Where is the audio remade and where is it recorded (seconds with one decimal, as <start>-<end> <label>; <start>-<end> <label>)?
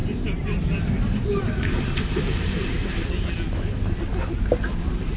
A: 0.0-3.1 remade; 3.1-5.2 recorded